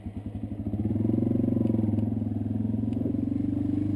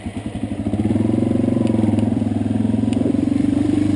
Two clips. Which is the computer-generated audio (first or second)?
second